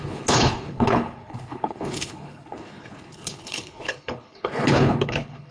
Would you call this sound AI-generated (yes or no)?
yes